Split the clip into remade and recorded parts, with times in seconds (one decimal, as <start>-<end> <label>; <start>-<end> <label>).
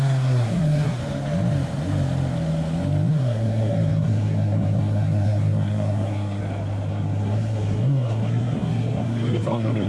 0.0-1.0 remade; 1.0-3.1 recorded; 3.1-6.4 remade; 6.4-6.9 recorded; 6.9-9.9 remade